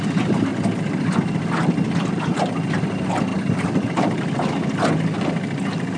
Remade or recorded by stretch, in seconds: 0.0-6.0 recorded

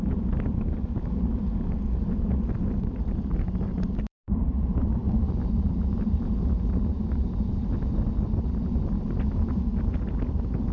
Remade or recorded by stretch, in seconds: 0.0-10.7 recorded